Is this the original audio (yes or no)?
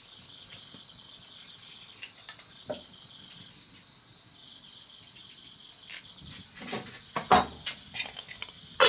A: yes